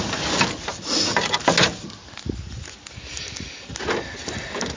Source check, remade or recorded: recorded